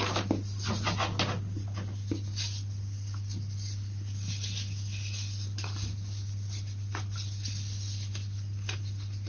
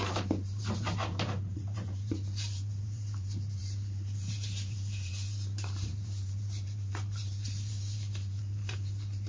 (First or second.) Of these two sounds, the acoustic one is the first